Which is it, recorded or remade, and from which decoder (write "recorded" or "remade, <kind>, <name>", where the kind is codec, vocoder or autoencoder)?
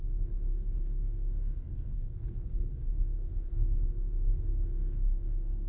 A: remade, codec, SNAC